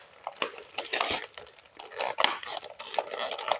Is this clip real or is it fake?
real